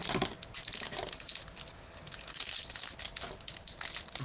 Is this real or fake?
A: real